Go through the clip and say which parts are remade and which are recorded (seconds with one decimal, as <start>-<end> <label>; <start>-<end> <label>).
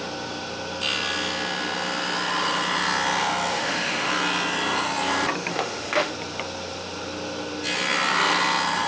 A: 0.0-3.5 recorded; 3.5-4.1 remade; 4.1-5.5 recorded; 5.5-6.1 remade; 6.1-8.9 recorded